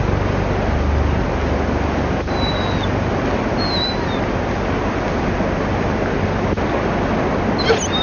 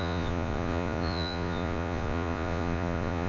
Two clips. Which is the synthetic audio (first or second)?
second